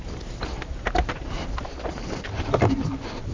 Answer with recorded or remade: recorded